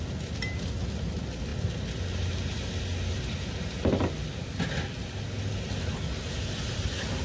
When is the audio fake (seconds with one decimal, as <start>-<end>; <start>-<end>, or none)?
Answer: none

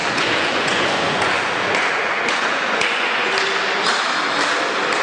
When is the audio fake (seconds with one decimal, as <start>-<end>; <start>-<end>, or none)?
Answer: 0.0-3.3

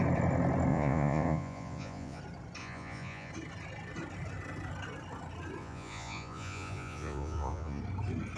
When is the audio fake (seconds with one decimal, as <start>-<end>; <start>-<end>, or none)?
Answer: 0.7-2.2; 2.6-3.3; 5.6-7.8

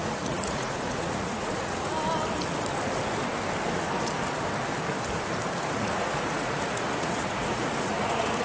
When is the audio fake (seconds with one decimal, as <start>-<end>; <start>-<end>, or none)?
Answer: 0.0-1.9; 5.7-8.4

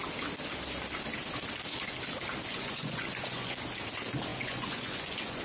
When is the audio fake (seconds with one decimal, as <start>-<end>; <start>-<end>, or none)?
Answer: 2.5-3.6; 4.3-5.4

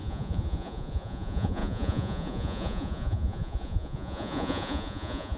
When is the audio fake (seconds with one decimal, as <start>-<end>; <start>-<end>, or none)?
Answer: 0.0-5.4

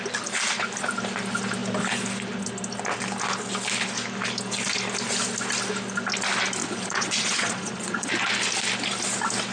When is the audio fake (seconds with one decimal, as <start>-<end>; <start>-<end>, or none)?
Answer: 6.6-8.1

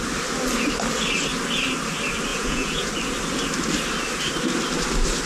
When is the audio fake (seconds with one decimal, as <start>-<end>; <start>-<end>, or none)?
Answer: 2.3-2.9